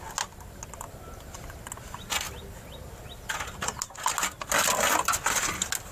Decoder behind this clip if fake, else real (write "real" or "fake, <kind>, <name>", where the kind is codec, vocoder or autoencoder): real